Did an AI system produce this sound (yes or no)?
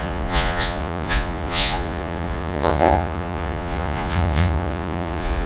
yes